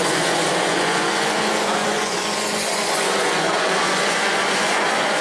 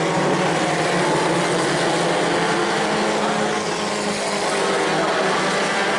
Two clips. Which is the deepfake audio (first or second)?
first